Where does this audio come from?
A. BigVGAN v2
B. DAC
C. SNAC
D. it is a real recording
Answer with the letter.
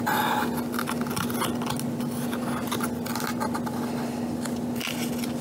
D